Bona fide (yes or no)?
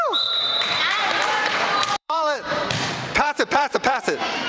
no